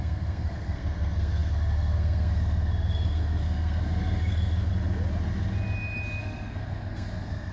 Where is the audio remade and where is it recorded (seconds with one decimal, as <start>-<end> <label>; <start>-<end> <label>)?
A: 0.0-4.7 remade; 4.7-6.2 recorded; 6.2-7.5 remade